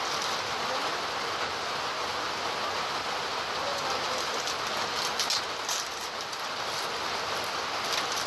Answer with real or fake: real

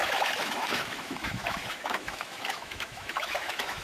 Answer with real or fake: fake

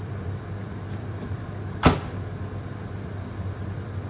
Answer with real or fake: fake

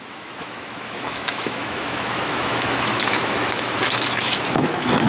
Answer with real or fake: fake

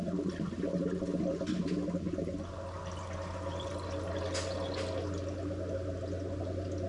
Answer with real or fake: real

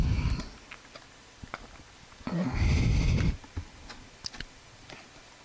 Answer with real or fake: real